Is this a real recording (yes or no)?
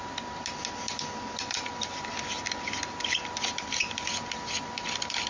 yes